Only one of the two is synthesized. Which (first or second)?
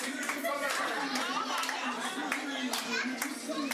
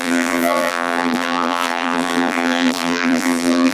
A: second